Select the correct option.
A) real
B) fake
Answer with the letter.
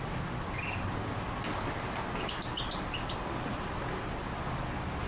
A